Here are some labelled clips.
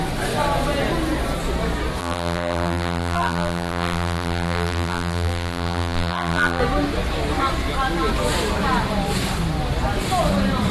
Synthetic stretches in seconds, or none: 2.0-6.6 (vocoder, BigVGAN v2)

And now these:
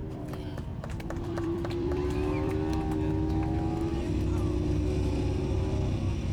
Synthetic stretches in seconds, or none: 0.0-2.5 (vocoder, BigVGAN v2)

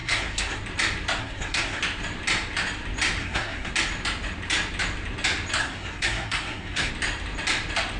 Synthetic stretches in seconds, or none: 0.0-0.6 (codec, SNAC); 1.2-1.8; 3.2-3.7; 5.6-6.9

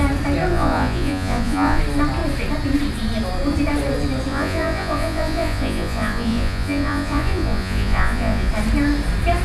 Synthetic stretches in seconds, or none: 0.5-1.8 (vocoder, Vocos); 4.3-8.5

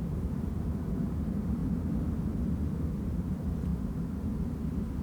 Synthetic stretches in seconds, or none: 0.0-1.6 (vocoder, BigVGAN v2); 2.7-5.0

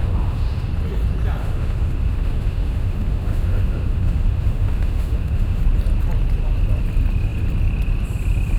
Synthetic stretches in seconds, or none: 0.0-0.7 (autoencoder, DAC-VAE); 1.4-5.6

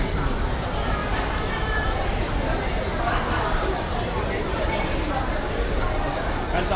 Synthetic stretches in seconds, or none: 1.0-5.1 (vocoder, BigVGAN v2)

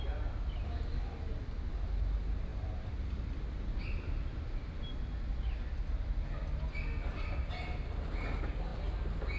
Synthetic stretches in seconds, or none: none